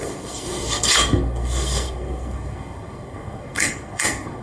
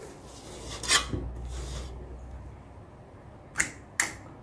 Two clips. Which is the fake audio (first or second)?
first